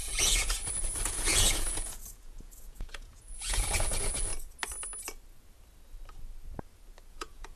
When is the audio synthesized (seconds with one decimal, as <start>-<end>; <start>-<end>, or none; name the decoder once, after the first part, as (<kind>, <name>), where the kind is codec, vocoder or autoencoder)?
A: 0.0-4.3 (vocoder, Vocos); 7.1-7.6